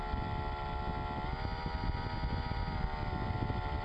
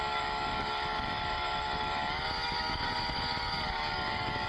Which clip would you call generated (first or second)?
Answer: second